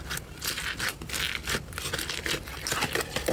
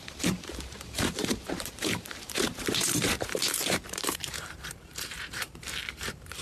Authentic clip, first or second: first